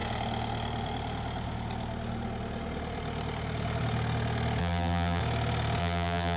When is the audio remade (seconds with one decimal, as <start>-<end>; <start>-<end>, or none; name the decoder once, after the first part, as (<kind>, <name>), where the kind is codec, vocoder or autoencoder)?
4.6-5.2 (vocoder, BigVGAN v2); 5.8-6.4